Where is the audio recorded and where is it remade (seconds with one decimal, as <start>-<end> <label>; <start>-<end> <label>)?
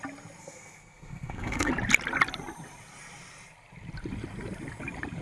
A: 0.0-0.4 recorded; 0.4-1.7 remade; 1.7-5.2 recorded